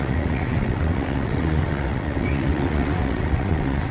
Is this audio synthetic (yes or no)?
yes